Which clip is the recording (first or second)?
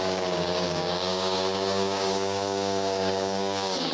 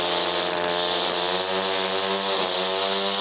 second